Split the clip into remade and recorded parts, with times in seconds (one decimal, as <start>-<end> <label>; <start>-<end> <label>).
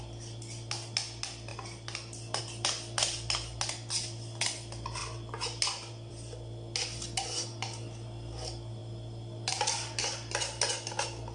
0.0-11.3 recorded